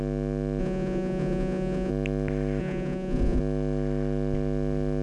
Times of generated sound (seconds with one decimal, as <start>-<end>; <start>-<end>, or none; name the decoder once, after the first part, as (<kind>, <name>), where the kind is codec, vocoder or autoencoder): 0.6-1.9 (vocoder, Vocos); 2.6-3.4